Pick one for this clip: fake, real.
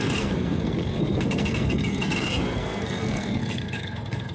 fake